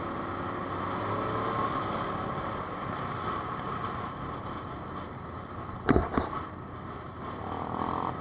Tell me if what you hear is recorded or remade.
recorded